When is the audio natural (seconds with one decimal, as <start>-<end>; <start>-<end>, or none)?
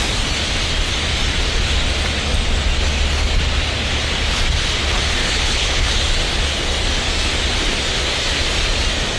0.0-5.2; 5.9-9.2